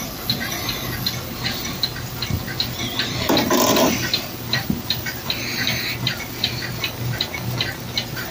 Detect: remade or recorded recorded